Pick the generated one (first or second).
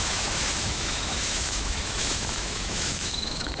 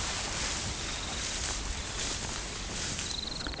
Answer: first